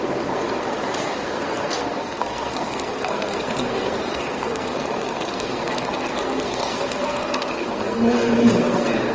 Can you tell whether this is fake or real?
fake